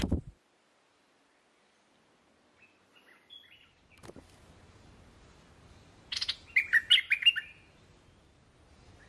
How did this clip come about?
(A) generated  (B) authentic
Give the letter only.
B